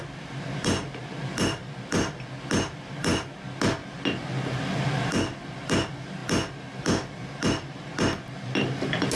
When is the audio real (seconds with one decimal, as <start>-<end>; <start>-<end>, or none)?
3.1-3.7; 6.2-6.8

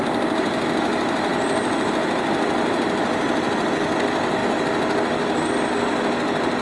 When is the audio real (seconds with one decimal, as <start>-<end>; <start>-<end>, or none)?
0.0-1.3; 1.9-6.6

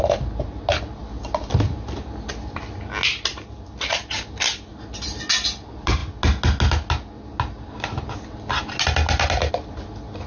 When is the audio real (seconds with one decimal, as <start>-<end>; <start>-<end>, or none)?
0.0-10.3

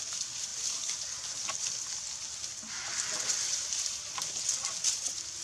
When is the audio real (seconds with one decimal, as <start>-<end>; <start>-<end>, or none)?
0.0-5.4

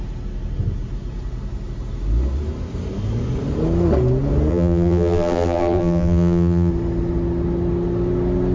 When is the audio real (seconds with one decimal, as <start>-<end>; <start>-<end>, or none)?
0.0-4.5; 6.7-8.5